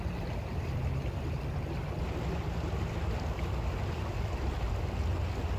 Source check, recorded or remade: recorded